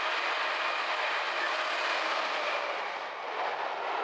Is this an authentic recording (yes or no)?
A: yes